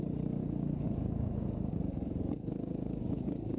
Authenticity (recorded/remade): remade